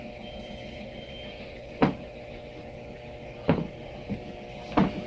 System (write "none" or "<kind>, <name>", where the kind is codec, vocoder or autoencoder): none